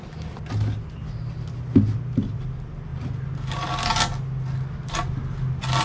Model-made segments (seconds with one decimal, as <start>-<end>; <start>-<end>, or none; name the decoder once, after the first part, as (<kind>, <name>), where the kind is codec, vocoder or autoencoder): none